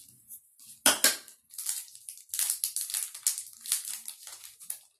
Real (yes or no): yes